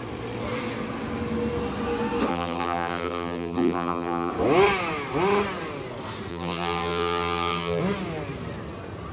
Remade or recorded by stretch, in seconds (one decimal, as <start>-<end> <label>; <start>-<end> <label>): 0.0-2.3 recorded; 2.3-4.3 remade; 4.3-6.3 recorded; 6.3-7.8 remade; 7.8-9.1 recorded